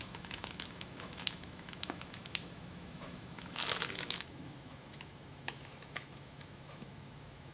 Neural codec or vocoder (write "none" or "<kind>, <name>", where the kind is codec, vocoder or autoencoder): autoencoder, DAC-VAE